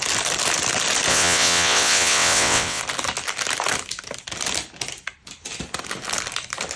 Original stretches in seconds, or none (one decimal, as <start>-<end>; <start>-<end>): 0.0-1.1; 2.8-6.8